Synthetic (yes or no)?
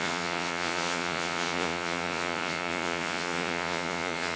yes